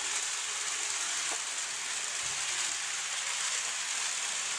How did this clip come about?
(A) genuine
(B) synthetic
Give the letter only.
A